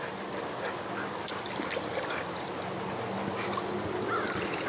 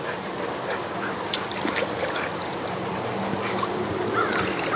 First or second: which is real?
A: first